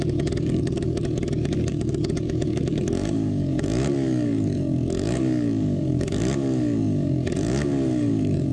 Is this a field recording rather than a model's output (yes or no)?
no